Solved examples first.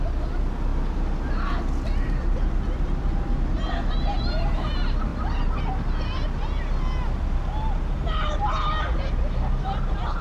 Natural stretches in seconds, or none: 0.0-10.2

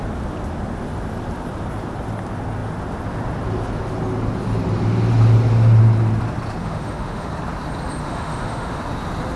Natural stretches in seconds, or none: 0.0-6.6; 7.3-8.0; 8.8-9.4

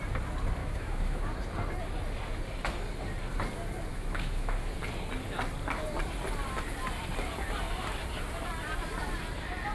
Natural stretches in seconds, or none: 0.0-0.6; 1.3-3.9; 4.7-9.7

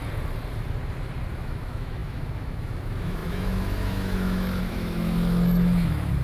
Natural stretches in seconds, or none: 0.0-1.3